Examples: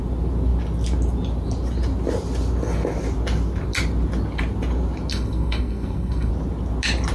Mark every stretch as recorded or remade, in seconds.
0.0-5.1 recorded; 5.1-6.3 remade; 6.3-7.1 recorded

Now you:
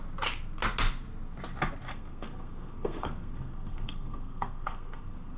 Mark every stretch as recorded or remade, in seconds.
0.0-1.9 recorded; 1.9-5.4 remade

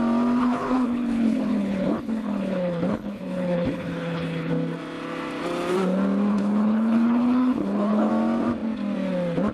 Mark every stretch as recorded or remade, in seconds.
0.0-0.4 recorded; 0.4-4.5 remade; 4.5-6.3 recorded; 6.3-8.1 remade; 8.1-9.5 recorded

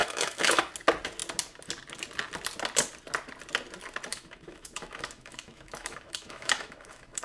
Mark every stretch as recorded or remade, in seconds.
0.0-0.6 remade; 0.6-4.1 recorded; 4.1-7.2 remade

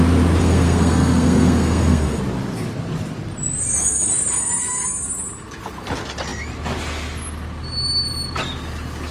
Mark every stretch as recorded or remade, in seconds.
0.0-0.4 recorded; 0.4-2.2 remade; 2.2-9.1 recorded

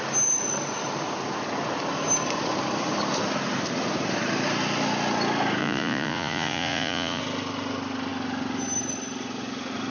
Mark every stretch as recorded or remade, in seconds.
0.0-5.6 recorded; 5.6-7.2 remade; 7.2-9.9 recorded

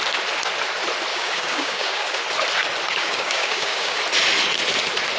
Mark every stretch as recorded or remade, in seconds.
0.0-1.1 recorded; 1.1-2.2 remade; 2.2-3.0 recorded; 3.0-4.0 remade; 4.0-5.2 recorded

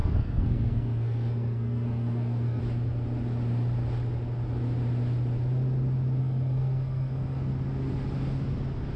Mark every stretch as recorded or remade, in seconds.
0.0-2.6 remade; 2.6-6.2 recorded; 6.2-7.5 remade; 7.5-9.0 recorded